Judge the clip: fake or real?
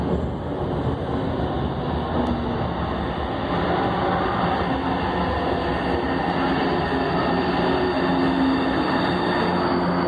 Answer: real